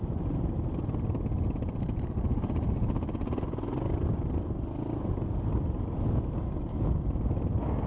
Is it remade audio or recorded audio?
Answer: recorded